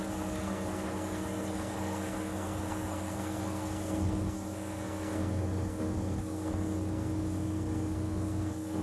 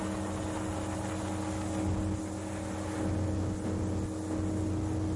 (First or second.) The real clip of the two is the second